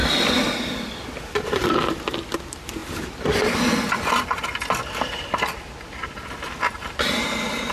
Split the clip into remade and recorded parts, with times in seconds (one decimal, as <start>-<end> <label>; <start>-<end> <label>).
0.0-7.7 recorded